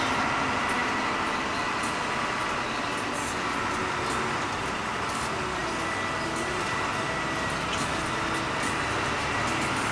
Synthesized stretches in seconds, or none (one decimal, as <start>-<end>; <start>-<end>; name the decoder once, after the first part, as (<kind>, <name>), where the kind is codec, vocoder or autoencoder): none